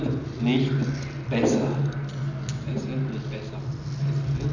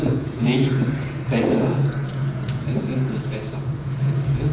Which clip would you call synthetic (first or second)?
second